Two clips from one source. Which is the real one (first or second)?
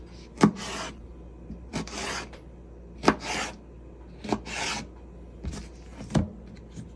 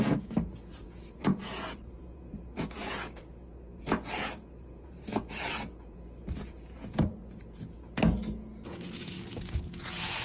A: first